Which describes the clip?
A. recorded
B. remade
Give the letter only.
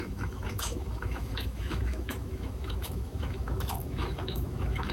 B